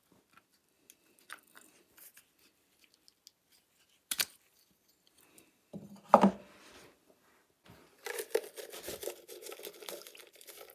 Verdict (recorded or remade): recorded